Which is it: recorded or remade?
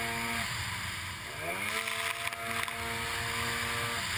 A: recorded